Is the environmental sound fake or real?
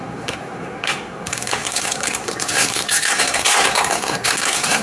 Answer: fake